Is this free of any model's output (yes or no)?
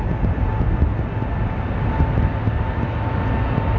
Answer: yes